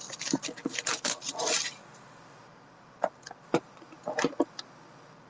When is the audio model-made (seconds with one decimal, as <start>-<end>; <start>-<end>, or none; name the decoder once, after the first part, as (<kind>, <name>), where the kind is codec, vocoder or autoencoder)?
none